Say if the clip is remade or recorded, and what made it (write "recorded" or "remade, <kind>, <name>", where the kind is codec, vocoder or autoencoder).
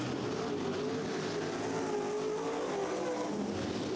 recorded